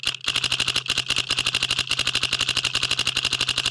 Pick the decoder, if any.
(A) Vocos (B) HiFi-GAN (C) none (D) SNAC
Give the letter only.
C